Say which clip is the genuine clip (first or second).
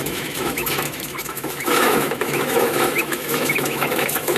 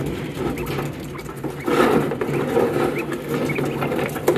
second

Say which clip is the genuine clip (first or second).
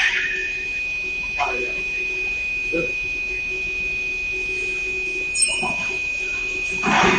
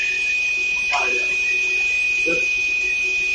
second